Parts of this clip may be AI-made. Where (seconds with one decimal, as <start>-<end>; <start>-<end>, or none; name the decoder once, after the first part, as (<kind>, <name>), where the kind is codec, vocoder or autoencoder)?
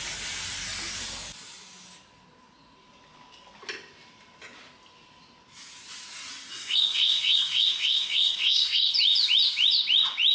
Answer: 6.5-8.9 (codec, SNAC)